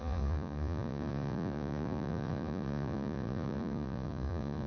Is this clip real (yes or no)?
no